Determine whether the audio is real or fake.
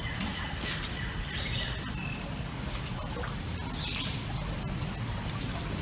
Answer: real